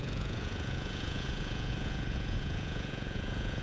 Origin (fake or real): fake